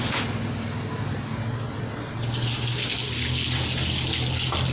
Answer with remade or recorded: recorded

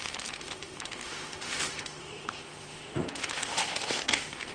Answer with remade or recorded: remade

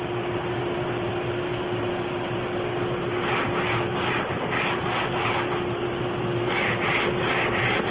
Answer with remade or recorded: recorded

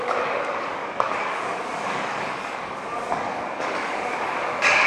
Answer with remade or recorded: remade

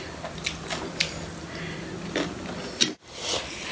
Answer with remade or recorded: recorded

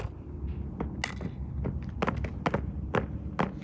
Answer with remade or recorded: recorded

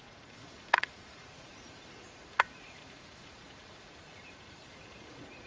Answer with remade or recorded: remade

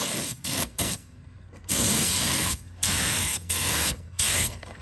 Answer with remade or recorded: remade